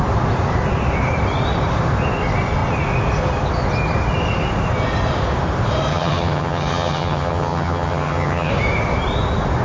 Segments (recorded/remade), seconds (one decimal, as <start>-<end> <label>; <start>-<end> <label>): 0.0-5.9 recorded; 5.9-8.5 remade; 8.5-9.6 recorded